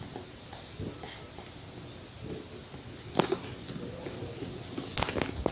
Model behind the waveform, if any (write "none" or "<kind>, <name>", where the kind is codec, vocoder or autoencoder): none